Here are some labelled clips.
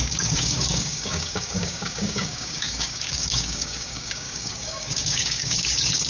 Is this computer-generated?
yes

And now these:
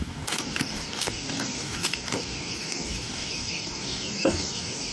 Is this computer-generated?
yes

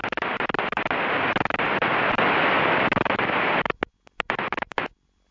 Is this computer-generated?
no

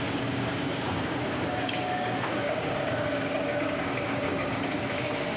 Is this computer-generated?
yes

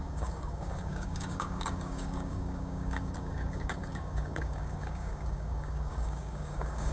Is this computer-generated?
yes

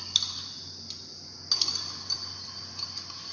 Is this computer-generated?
no